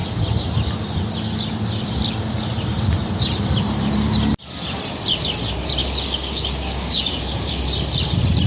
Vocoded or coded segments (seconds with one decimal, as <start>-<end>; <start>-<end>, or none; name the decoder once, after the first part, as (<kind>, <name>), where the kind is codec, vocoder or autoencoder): 5.8-7.6 (codec, DAC)